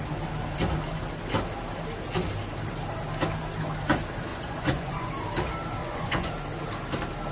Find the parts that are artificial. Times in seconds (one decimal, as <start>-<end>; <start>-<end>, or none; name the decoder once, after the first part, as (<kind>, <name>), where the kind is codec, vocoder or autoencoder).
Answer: 4.3-5.1 (vocoder, Vocos); 5.8-6.3